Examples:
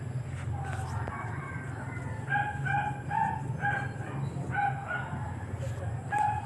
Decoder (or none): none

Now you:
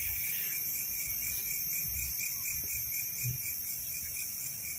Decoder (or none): none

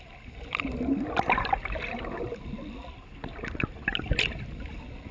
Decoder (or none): none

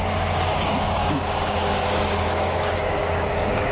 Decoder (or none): codec, DAC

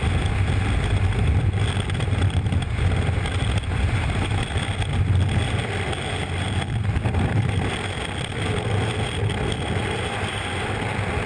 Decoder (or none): none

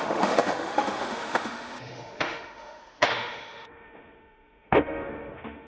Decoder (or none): autoencoder, DAC-VAE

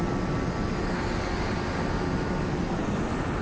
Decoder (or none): none